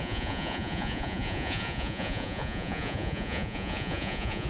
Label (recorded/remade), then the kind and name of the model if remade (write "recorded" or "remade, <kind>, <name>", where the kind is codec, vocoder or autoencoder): remade, vocoder, Vocos